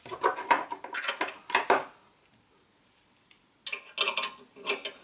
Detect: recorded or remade recorded